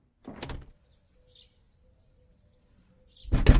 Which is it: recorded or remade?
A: recorded